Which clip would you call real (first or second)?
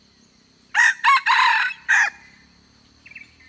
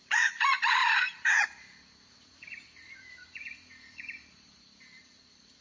first